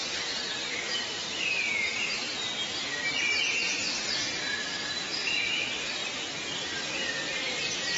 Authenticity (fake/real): real